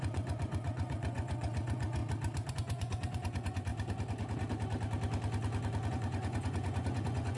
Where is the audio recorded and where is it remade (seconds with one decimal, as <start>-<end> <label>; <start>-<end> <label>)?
0.0-2.0 remade; 2.0-2.5 recorded; 2.5-3.7 remade; 3.7-5.9 recorded; 5.9-7.4 remade